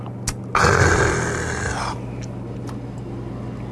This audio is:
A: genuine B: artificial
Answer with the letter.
A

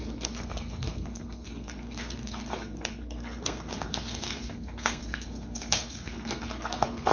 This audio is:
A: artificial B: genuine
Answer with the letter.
A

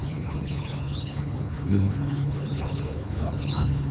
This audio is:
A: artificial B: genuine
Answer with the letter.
A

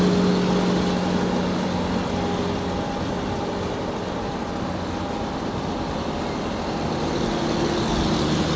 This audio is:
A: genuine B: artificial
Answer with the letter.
A